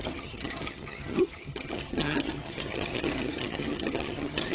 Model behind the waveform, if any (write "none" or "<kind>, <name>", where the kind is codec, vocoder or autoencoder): vocoder, HiFi-GAN